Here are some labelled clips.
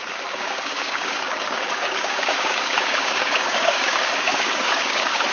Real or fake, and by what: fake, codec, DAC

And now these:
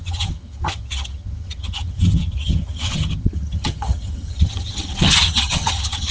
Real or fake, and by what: fake, vocoder, HiFi-GAN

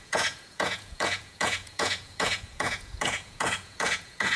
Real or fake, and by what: fake, vocoder, Vocos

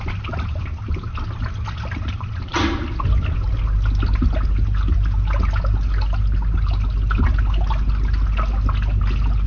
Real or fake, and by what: real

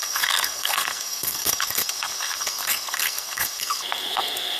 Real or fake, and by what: fake, codec, SNAC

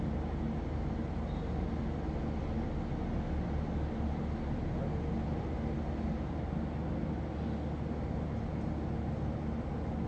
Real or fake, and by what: real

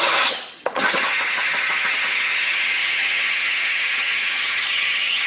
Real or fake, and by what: fake, vocoder, HiFi-GAN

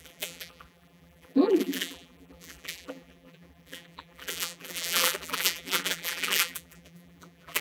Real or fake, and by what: fake, vocoder, BigVGAN v2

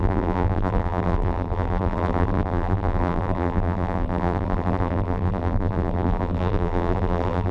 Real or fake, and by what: fake, vocoder, BigVGAN v2